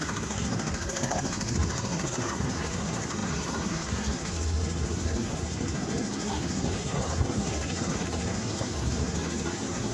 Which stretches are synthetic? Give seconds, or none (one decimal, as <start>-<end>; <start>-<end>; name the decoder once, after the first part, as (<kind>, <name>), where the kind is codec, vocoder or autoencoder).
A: 0.0-9.9 (codec, SNAC)